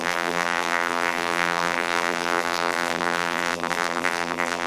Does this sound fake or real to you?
fake